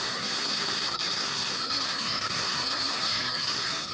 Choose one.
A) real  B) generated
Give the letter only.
B